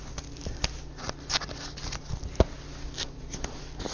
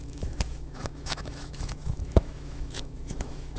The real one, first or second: first